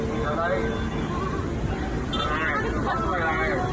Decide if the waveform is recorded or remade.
recorded